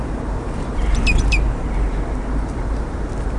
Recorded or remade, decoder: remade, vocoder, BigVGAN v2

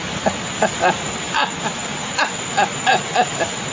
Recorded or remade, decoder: recorded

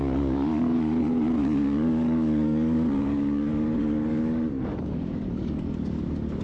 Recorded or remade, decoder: remade, codec, DAC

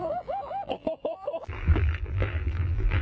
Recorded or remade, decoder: remade, vocoder, BigVGAN v2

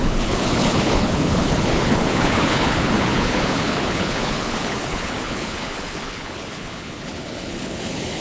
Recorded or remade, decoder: remade, codec, HILCodec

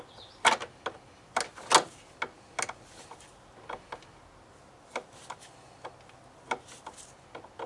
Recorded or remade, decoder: recorded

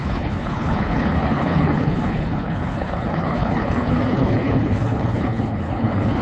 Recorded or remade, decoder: remade, codec, HILCodec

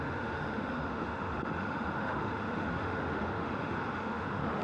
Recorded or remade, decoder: remade, autoencoder, DAC-VAE